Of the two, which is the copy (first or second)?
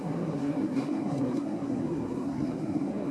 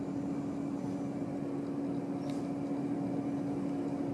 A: first